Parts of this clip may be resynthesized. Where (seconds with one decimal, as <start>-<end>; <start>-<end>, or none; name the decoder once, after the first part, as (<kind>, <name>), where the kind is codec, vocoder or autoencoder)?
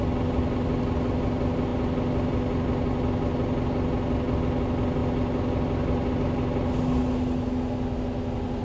none